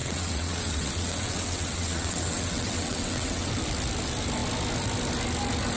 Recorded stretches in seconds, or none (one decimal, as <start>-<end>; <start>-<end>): 3.5-5.8